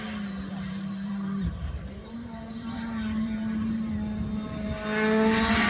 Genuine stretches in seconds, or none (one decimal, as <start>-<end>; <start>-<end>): 0.0-0.5; 3.9-5.7